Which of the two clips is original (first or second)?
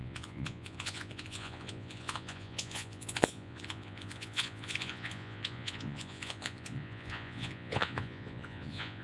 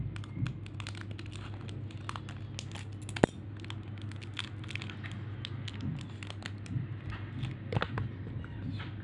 second